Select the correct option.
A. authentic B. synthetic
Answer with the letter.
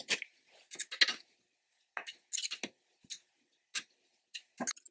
A